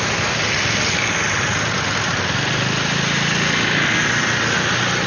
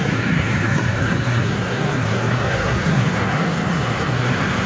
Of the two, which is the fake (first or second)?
second